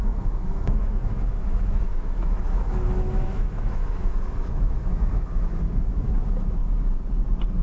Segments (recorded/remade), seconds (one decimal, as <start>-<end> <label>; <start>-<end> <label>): 0.0-6.6 remade; 6.6-7.6 recorded